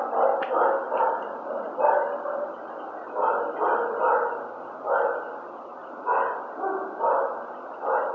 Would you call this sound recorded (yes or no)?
yes